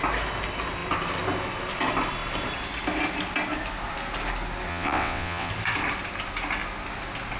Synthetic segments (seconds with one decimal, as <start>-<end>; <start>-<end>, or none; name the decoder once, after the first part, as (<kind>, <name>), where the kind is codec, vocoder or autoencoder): 4.7-5.5 (vocoder, WaveNeXt)

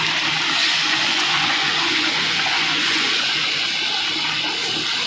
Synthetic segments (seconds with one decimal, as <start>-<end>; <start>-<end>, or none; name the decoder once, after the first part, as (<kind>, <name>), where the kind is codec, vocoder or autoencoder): 0.6-3.7 (vocoder, Vocos)

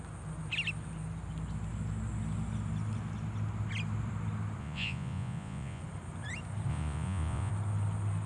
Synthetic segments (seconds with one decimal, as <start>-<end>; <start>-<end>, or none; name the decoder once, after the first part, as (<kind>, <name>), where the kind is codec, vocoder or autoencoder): 4.6-5.8 (vocoder, Vocos); 6.7-7.5

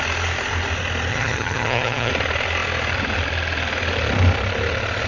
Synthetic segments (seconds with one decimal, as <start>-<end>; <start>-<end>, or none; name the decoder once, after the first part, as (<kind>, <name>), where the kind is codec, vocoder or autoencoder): 1.1-2.1 (vocoder, HiFi-GAN)

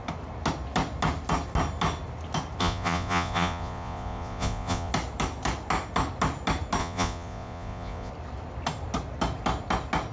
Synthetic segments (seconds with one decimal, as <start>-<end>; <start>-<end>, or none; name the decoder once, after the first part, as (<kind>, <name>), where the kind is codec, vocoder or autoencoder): 2.6-4.9 (vocoder, Vocos); 6.8-8.1

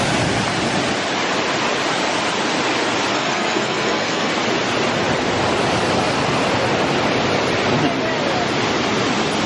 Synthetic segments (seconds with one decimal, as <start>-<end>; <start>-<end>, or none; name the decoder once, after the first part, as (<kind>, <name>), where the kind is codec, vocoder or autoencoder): 3.1-4.3 (codec, SNAC)

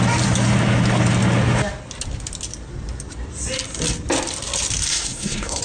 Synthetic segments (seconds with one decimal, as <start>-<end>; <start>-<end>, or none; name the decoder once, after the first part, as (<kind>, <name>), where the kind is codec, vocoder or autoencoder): 4.9-5.6 (codec, SNAC)